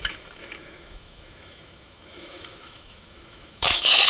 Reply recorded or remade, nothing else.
remade